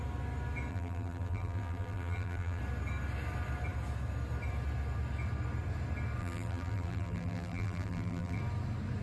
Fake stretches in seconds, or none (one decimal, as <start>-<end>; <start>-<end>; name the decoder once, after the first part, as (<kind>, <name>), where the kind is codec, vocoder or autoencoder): 0.7-2.6 (vocoder, BigVGAN v2); 6.2-8.4